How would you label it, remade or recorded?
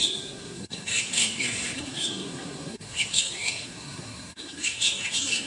remade